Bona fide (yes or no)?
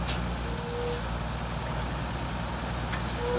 yes